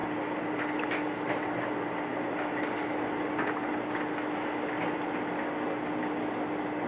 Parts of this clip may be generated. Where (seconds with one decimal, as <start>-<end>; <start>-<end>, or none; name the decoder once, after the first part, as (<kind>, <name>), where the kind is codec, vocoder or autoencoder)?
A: none